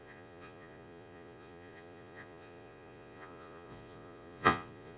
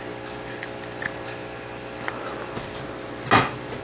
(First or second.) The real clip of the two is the second